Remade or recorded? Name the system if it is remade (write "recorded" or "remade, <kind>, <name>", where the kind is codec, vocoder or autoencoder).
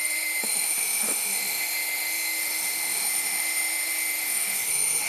remade, autoencoder, DAC-VAE